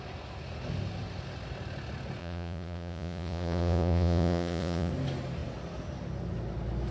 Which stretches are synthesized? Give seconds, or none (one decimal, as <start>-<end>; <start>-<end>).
2.2-4.9